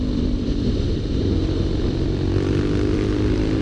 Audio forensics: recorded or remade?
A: remade